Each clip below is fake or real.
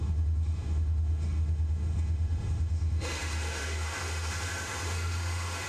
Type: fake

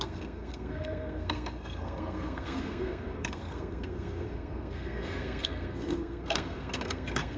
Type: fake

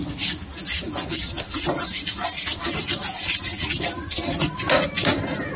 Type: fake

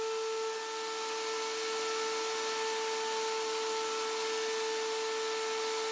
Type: real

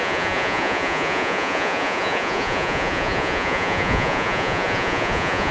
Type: fake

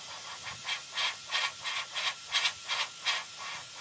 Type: fake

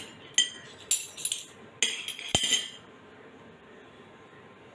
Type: real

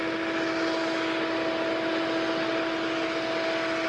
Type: real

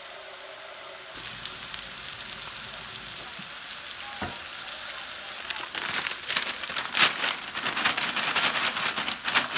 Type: real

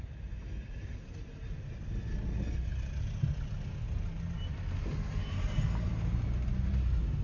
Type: real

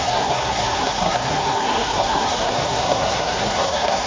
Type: fake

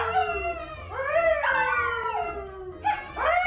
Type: real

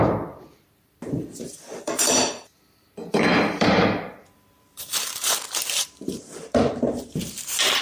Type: fake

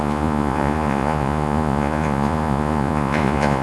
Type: fake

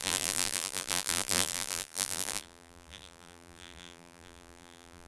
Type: fake